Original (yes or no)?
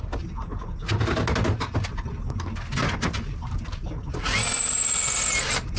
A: yes